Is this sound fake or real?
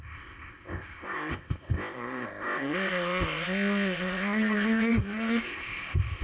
fake